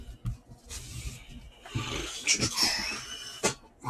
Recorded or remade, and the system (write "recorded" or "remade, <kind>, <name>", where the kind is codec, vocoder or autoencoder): recorded